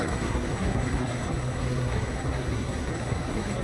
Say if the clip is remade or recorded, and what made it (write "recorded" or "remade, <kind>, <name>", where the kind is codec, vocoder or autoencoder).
remade, codec, SNAC